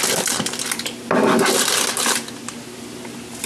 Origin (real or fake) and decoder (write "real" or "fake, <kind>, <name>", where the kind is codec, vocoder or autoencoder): real